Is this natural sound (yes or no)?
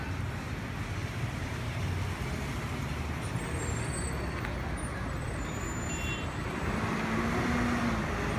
yes